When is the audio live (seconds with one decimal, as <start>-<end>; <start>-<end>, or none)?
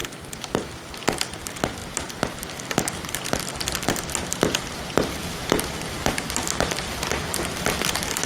0.8-8.3